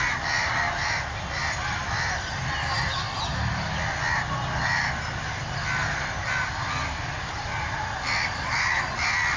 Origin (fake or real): real